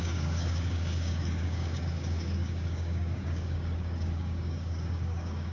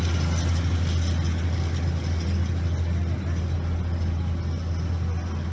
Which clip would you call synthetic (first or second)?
first